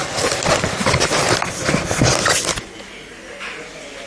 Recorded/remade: recorded